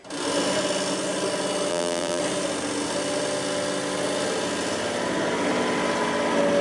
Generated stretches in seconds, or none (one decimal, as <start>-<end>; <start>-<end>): 1.7-2.2